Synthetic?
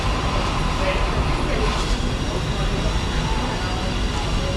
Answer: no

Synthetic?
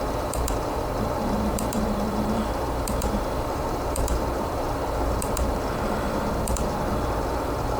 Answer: yes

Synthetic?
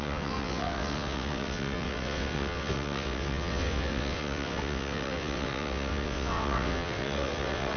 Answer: yes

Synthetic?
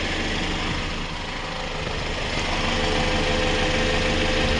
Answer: no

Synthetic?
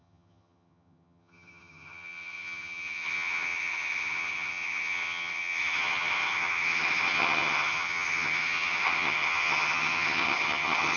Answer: yes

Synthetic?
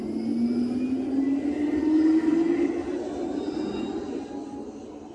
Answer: no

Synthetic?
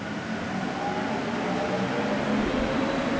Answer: no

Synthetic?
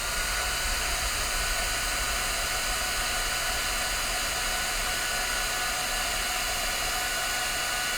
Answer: no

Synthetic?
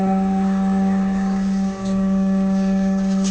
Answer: yes